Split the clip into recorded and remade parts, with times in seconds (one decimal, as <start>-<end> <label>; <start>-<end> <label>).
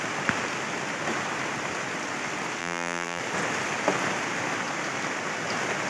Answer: 0.0-2.6 recorded; 2.6-3.2 remade; 3.2-5.9 recorded